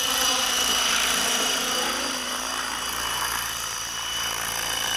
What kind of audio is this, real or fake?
fake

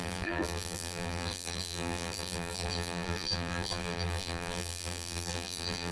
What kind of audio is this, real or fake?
fake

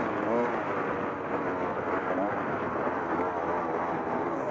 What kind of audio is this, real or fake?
real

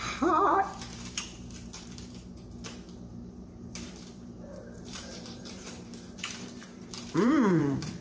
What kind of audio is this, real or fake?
fake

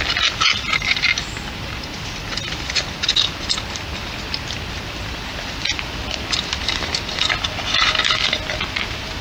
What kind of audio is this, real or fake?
real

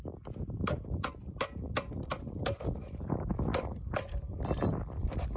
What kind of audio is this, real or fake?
fake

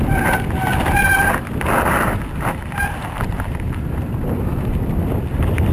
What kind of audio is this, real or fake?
real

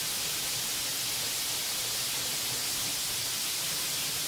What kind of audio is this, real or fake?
real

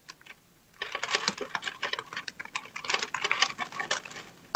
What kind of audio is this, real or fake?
real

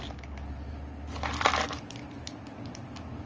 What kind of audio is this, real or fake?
real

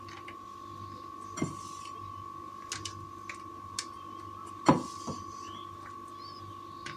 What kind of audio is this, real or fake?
real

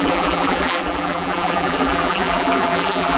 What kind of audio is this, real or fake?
fake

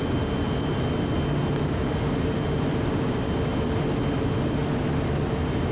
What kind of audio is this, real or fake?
real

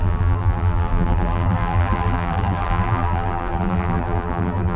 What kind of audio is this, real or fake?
fake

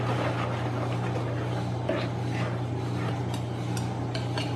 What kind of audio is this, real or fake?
real